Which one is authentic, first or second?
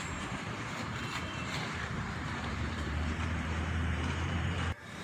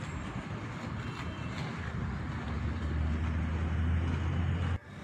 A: second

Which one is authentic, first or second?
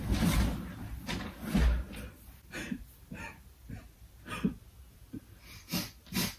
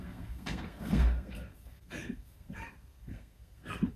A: first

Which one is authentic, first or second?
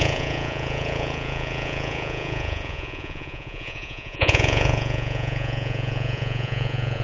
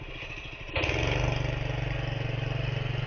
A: second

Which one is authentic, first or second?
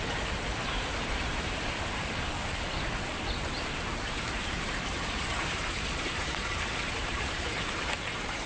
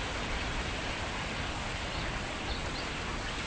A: second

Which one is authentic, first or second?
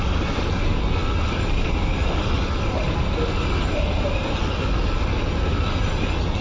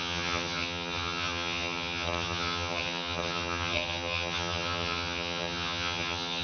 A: first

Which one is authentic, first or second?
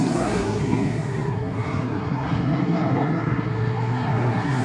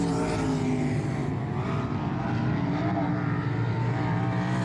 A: second